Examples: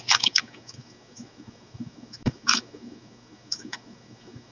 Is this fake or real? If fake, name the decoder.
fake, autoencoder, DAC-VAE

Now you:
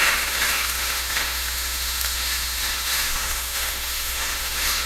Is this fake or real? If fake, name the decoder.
fake, autoencoder, DAC-VAE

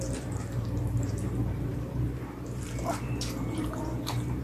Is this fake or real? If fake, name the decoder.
fake, vocoder, BigVGAN v2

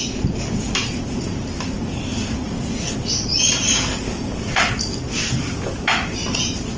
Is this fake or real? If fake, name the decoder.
real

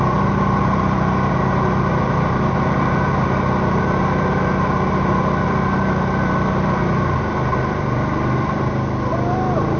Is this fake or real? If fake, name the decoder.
real